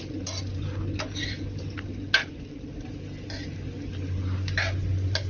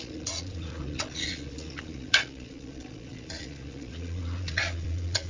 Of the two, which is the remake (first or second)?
second